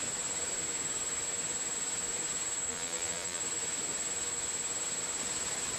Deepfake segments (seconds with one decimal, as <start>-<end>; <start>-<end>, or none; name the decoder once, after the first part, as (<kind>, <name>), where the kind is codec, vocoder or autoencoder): 2.7-3.4 (vocoder, BigVGAN v2)